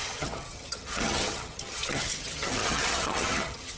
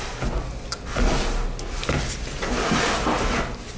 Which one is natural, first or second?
second